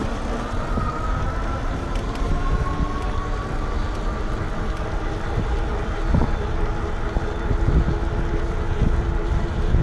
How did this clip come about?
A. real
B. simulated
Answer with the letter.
A